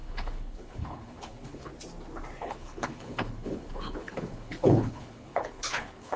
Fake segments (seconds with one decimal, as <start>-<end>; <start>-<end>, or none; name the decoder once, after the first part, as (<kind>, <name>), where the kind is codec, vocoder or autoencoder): 0.0-1.7 (codec, HILCodec); 2.4-6.2